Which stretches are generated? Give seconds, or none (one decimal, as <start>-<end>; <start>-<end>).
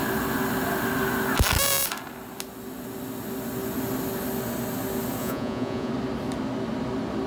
5.2-5.9